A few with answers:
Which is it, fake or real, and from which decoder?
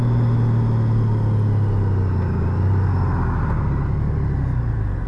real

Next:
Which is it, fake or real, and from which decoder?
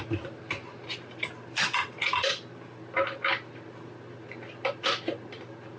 real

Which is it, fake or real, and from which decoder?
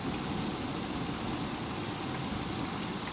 real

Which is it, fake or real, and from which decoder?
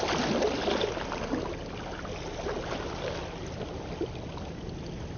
real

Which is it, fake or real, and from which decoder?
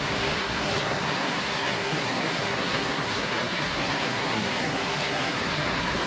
fake, codec, SNAC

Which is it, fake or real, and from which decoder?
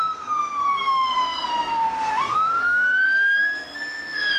fake, codec, SNAC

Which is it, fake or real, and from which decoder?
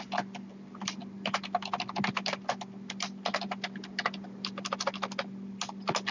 real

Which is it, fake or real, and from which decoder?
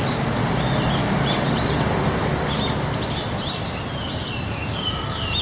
real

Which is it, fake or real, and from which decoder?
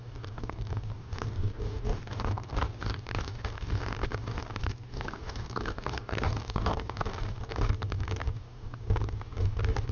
fake, codec, DAC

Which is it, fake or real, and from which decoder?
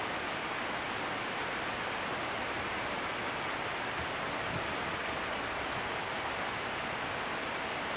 real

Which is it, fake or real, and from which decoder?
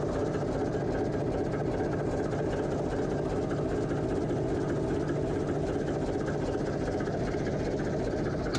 real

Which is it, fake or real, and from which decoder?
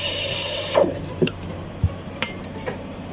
fake, vocoder, BigVGAN v2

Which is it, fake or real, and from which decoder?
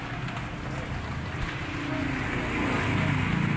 real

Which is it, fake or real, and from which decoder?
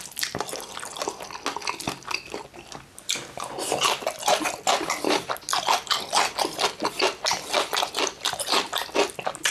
real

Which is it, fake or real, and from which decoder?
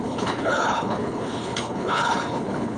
fake, codec, HILCodec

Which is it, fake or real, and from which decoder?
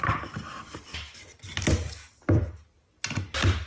real